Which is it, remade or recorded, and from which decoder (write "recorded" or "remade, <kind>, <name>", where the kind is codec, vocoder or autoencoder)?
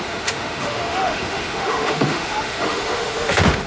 remade, autoencoder, DAC-VAE